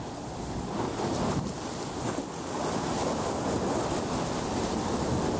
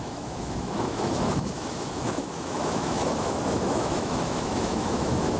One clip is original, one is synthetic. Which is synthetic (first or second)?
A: second